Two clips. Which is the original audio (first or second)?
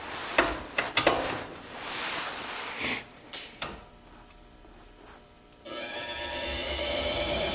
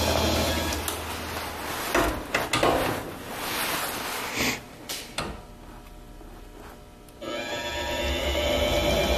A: second